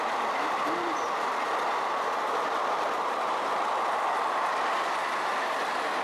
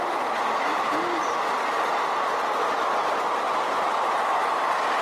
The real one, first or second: second